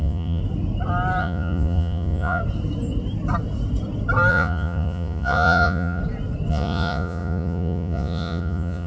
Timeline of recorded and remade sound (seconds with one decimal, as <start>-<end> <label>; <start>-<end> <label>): 0.0-0.4 remade; 0.4-1.2 recorded; 1.2-2.4 remade; 2.4-4.3 recorded; 4.3-6.0 remade; 6.0-6.5 recorded; 6.5-8.9 remade